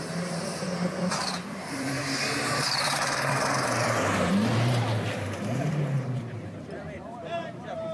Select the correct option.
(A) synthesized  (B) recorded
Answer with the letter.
A